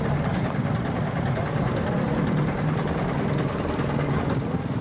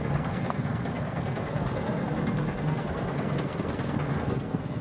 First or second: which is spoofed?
second